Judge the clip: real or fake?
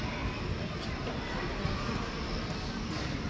real